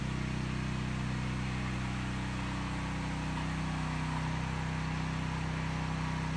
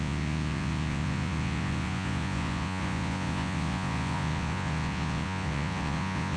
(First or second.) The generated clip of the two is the second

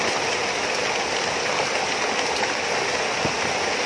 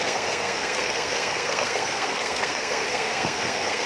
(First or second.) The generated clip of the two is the second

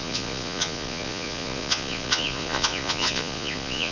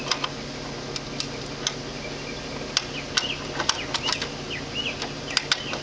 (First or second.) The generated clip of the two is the first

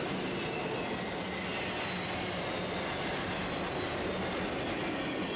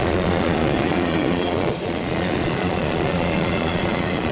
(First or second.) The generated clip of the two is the second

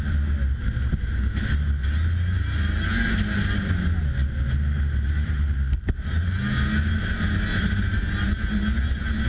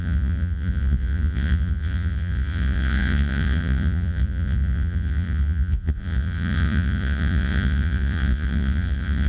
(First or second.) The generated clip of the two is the second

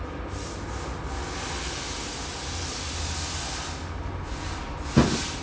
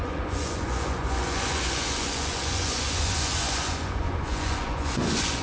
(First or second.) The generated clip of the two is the second